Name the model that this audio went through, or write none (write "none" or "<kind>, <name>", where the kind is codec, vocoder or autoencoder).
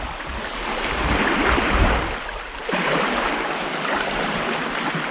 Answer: none